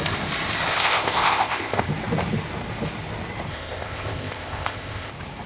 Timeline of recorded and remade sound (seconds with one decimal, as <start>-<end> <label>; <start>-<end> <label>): 0.0-0.7 recorded; 0.7-1.8 remade; 1.8-3.5 recorded; 3.5-5.1 remade; 5.1-5.5 recorded